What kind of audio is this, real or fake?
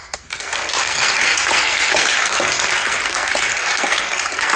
fake